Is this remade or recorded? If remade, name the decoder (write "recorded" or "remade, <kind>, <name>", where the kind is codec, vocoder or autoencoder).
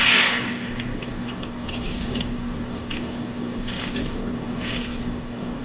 remade, codec, DAC